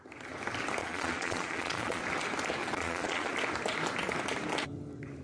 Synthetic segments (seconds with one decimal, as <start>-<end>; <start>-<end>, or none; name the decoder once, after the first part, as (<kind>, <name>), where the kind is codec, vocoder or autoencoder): 0.8-2.0 (vocoder, Vocos); 2.6-3.3